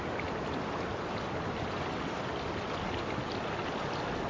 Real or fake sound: real